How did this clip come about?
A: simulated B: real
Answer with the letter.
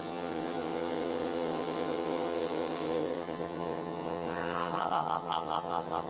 A